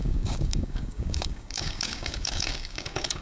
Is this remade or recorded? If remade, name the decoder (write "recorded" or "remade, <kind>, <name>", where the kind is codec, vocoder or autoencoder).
remade, codec, DAC